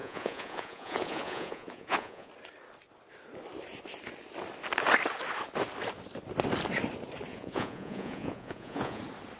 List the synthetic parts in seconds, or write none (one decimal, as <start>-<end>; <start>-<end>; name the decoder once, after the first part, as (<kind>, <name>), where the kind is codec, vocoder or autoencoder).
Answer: 0.0-2.3 (vocoder, Vocos); 7.3-9.0

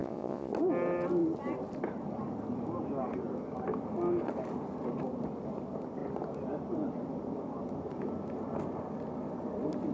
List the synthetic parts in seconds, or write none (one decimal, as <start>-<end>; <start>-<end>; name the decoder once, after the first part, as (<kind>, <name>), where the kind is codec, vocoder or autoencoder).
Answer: 0.0-0.5 (vocoder, Vocos)

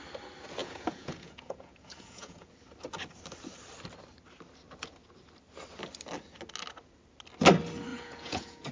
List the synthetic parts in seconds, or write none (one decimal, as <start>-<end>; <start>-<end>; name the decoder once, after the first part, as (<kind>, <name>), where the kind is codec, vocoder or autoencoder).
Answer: 0.6-2.5 (vocoder, Vocos); 7.9-8.7

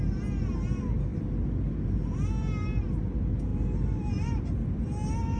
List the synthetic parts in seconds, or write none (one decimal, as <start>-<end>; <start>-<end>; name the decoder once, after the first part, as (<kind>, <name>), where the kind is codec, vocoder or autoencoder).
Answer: none